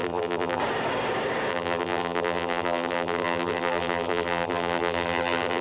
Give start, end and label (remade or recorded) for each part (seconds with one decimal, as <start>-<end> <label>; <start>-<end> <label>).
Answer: 0.0-0.6 remade; 0.6-1.5 recorded; 1.5-5.6 remade